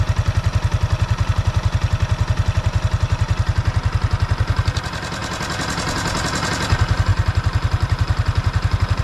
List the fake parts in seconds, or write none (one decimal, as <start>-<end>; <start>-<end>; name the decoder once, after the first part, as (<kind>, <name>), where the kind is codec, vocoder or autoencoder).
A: 7.1-9.0 (vocoder, BigVGAN v2)